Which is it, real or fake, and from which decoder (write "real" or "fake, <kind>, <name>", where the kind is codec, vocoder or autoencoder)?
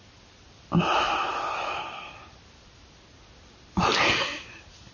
real